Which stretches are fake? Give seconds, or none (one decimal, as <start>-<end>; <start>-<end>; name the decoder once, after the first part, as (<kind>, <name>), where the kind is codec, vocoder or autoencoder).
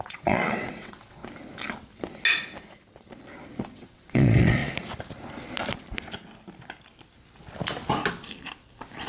0.0-1.2 (vocoder, WaveNeXt); 3.6-4.6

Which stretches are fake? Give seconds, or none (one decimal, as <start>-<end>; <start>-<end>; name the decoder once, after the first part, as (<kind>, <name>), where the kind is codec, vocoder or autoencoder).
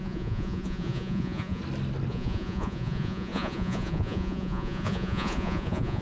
0.0-1.6 (vocoder, Vocos); 2.1-6.0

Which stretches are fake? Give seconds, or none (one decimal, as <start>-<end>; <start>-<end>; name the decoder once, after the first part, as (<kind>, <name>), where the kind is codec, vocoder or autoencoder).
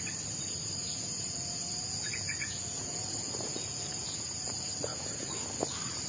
0.8-4.5 (vocoder, Vocos); 4.9-5.4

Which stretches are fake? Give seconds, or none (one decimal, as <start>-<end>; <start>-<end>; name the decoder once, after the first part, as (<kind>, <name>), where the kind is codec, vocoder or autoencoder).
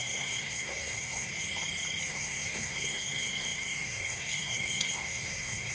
0.0-1.3 (codec, SNAC); 2.1-5.7